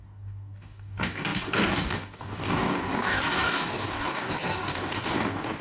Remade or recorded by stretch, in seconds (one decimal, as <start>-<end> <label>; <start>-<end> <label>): 0.0-5.6 remade